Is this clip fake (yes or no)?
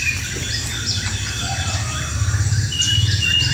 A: no